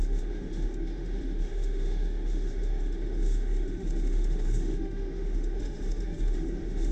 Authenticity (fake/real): fake